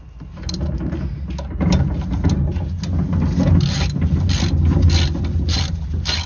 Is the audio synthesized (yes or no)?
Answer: no